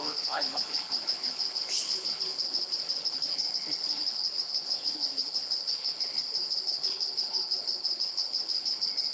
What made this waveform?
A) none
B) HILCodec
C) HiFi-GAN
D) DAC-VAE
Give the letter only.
B